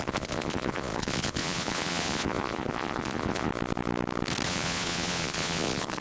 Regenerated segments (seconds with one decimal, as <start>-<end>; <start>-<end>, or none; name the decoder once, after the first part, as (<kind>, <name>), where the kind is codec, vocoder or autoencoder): 0.0-3.5 (vocoder, Vocos); 4.5-6.0